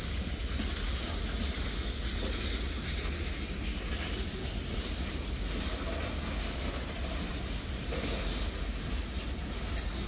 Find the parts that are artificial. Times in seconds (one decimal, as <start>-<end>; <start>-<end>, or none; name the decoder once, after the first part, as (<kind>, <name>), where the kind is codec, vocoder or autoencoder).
none